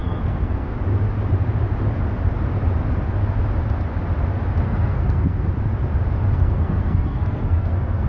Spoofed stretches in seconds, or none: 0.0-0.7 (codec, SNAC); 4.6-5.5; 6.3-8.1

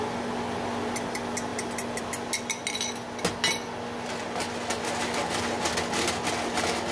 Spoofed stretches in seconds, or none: none

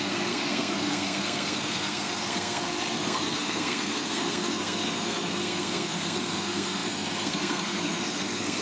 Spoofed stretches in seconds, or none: 0.0-8.6 (codec, SNAC)

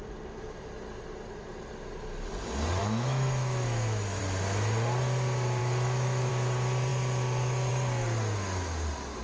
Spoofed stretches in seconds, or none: 2.8-4.2 (autoencoder, DAC-VAE); 5.6-6.3

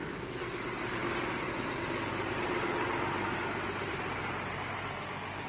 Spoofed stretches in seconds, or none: none

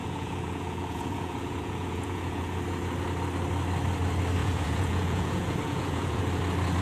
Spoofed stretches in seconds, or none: 0.0-2.6 (vocoder, Vocos); 4.4-6.2

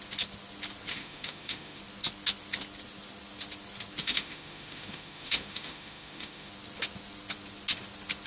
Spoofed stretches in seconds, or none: 0.9-1.8 (autoencoder, DAC-VAE); 4.0-6.5

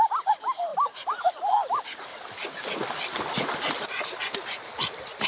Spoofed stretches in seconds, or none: 0.7-1.4 (vocoder, BigVGAN v2)